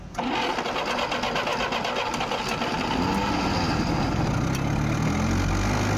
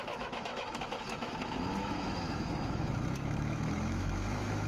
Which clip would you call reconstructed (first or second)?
second